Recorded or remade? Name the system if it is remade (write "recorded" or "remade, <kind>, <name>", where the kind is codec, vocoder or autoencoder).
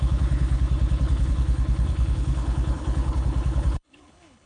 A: remade, codec, HILCodec